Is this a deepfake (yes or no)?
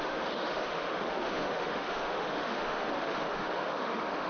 yes